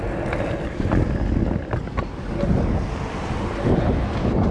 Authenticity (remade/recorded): recorded